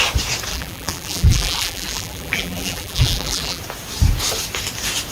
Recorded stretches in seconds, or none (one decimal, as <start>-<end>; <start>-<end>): 0.0-0.5; 3.6-5.1